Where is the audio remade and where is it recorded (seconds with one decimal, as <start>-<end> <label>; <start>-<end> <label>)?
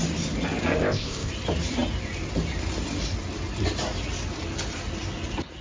0.0-0.8 recorded; 0.8-1.3 remade; 1.3-5.6 recorded